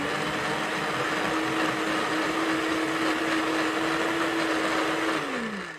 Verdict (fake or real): real